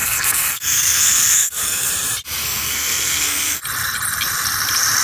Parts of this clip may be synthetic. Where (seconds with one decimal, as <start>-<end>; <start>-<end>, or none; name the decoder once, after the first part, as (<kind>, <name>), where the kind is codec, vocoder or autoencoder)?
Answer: 0.0-1.9 (codec, SNAC); 2.4-3.6